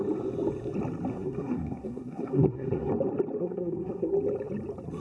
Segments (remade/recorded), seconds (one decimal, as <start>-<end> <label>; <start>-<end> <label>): 0.0-1.1 recorded; 1.1-2.9 remade; 2.9-3.4 recorded; 3.4-4.1 remade; 4.1-5.0 recorded